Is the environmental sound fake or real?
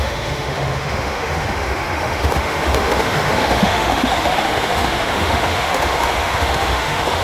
fake